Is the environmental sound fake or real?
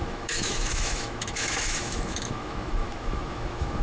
fake